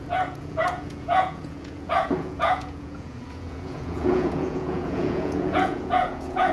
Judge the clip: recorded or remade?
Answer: remade